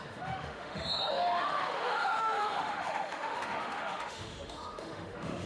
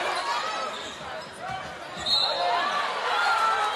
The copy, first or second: first